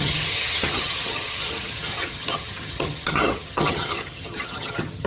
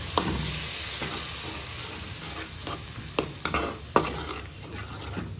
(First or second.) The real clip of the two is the second